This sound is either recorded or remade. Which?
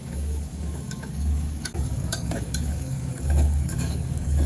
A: remade